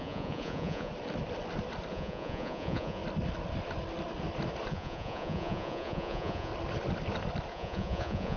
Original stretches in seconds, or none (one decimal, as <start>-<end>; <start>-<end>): 0.9-1.9; 3.0-4.7; 6.5-7.5